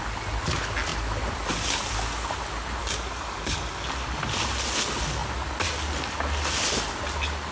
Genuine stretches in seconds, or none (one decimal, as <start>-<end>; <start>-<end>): 0.0-2.8; 3.9-7.5